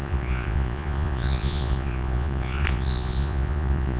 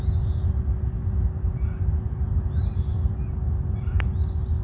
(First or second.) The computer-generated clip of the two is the first